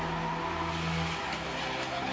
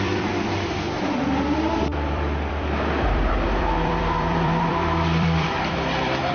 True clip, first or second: first